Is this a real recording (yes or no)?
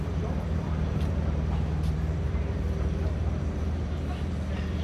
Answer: no